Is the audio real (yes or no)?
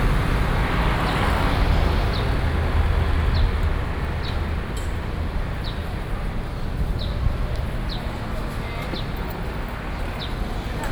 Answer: yes